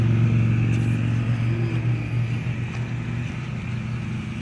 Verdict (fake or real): real